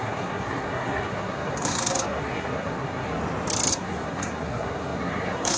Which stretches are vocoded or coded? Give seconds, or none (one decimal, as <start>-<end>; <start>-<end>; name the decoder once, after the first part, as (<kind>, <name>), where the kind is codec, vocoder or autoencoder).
0.0-3.2 (codec, SNAC); 3.7-5.6